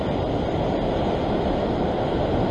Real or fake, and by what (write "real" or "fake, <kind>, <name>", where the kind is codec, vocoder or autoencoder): real